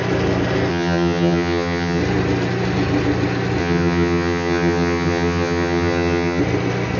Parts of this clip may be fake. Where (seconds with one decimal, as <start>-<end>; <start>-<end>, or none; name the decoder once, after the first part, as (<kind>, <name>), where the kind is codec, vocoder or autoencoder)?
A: 0.7-2.0 (vocoder, HiFi-GAN); 3.6-6.4